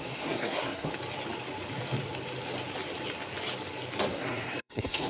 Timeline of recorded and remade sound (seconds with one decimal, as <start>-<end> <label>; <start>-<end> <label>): 0.0-0.9 remade; 0.9-4.0 recorded; 4.0-5.1 remade